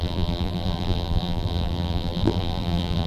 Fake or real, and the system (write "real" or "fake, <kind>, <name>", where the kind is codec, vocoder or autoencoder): fake, vocoder, BigVGAN v2